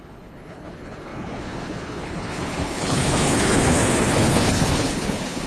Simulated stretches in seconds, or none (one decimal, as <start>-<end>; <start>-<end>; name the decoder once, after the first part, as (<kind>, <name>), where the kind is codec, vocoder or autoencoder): 0.0-5.5 (codec, HILCodec)

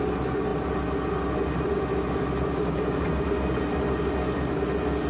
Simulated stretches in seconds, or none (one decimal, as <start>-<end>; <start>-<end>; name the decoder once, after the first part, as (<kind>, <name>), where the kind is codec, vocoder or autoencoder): none

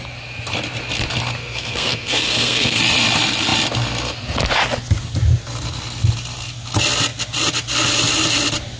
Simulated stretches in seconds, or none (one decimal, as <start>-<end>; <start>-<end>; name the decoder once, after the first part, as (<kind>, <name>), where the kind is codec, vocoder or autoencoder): 1.4-2.8 (codec, SNAC)

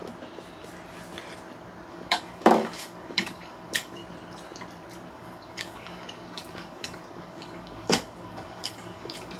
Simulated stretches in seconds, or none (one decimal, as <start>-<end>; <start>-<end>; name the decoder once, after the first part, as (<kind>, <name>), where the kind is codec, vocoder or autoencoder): 1.9-4.0 (codec, DAC); 5.1-9.4

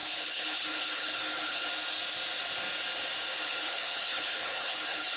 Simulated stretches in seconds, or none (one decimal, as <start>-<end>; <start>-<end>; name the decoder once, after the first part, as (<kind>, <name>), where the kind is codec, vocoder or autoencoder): 0.0-1.7 (codec, HILCodec); 3.4-5.2

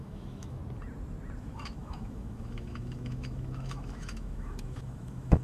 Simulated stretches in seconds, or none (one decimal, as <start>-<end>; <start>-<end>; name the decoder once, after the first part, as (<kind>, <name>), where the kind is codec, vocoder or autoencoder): 0.0-0.6 (autoencoder, DAC-VAE); 1.4-5.4

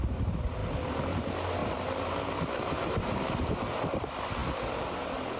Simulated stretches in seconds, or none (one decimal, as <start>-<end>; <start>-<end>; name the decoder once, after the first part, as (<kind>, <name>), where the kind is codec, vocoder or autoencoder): 0.6-1.2 (vocoder, BigVGAN v2); 1.6-3.5

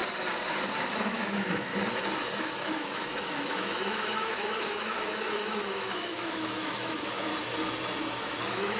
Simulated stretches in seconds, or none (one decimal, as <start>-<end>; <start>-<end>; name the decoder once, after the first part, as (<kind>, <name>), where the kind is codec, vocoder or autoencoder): 0.8-1.7 (autoencoder, DAC-VAE); 2.4-7.3; 8.4-8.8